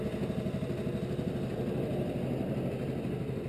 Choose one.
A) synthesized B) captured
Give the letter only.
B